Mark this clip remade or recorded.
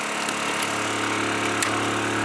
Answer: recorded